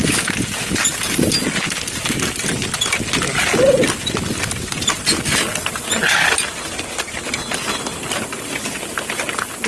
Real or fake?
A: real